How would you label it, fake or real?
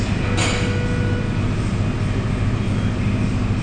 real